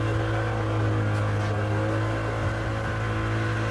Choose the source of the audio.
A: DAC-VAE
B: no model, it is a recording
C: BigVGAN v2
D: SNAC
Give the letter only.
B